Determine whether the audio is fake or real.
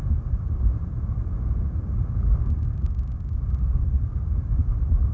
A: real